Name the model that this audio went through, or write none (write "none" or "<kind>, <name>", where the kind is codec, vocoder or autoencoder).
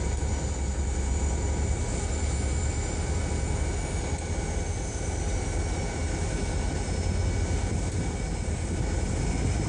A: none